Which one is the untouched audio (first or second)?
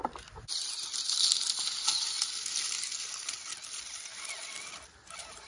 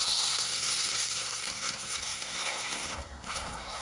first